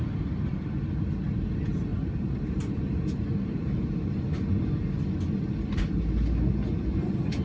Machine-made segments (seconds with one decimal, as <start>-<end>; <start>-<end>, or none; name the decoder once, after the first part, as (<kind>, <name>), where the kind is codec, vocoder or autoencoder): 1.9-4.1 (vocoder, BigVGAN v2)